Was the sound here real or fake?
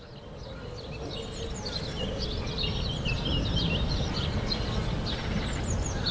real